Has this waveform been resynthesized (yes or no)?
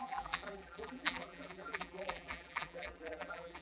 yes